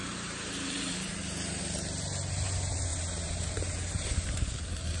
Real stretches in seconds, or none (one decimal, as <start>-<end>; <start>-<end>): 1.6-2.9; 4.6-5.0